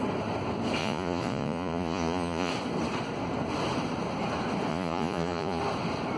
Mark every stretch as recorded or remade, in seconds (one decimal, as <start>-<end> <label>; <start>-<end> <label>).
0.0-0.8 recorded; 0.8-2.5 remade; 2.5-4.7 recorded; 4.7-5.6 remade; 5.6-6.2 recorded